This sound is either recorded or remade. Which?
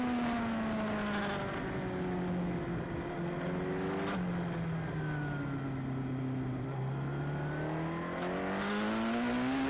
recorded